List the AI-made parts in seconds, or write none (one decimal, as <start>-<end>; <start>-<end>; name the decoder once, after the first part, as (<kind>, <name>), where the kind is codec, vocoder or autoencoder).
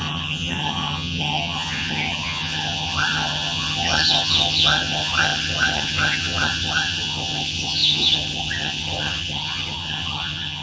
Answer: 0.0-10.6 (vocoder, HiFi-GAN)